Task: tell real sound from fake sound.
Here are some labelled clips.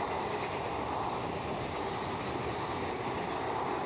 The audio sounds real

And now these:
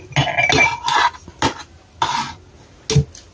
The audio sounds real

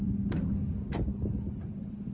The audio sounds real